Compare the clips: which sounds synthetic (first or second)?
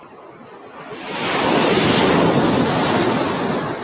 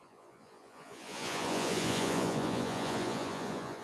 second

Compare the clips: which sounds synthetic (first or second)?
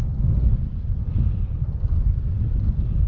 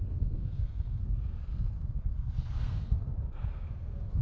second